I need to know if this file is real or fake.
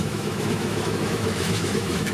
fake